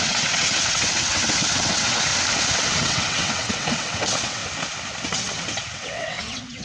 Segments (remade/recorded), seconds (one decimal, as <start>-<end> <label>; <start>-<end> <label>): 0.0-2.1 remade; 2.1-2.6 recorded; 2.6-4.4 remade; 4.4-5.0 recorded; 5.0-6.6 remade